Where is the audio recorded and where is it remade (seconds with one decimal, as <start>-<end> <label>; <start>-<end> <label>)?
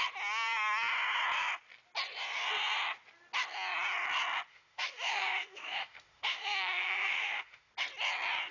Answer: 0.0-4.5 recorded; 4.5-7.7 remade; 7.7-8.5 recorded